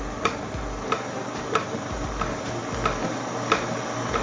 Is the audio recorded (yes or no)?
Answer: yes